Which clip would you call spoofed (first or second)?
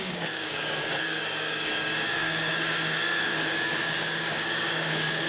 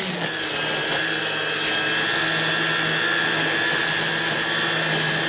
first